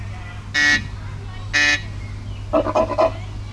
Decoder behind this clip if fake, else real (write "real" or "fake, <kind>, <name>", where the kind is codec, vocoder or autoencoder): real